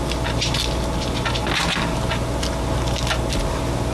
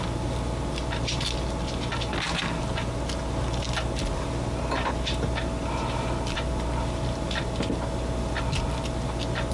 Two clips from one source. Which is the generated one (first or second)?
second